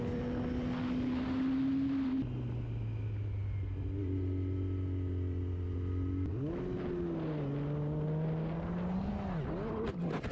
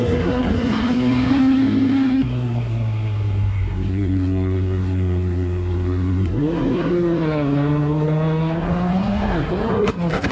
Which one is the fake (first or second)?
second